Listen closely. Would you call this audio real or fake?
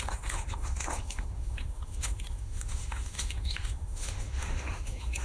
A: fake